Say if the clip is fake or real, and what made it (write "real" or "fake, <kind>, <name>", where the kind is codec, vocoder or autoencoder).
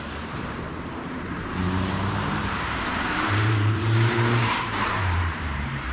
fake, vocoder, BigVGAN v2